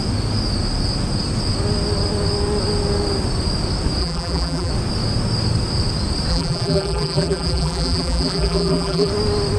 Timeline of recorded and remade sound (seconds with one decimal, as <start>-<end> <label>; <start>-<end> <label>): 0.0-4.0 recorded; 4.0-4.7 remade; 4.7-6.3 recorded; 6.3-9.1 remade; 9.1-9.6 recorded